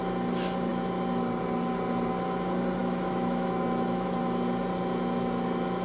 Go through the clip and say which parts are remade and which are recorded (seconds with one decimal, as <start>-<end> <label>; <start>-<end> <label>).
0.0-2.8 recorded; 2.8-4.2 remade; 4.2-5.8 recorded